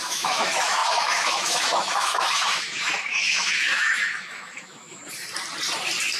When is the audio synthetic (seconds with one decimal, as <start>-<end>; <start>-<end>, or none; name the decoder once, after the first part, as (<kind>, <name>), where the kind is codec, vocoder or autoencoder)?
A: 0.0-5.0 (autoencoder, DAC-VAE)